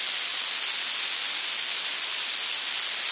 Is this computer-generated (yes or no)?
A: no